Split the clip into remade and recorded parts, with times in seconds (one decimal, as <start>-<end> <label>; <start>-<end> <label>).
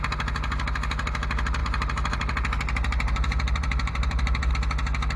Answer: 0.0-1.6 recorded; 1.6-4.5 remade; 4.5-5.2 recorded